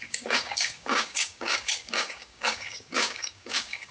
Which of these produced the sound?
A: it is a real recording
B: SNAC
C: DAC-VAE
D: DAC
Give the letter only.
D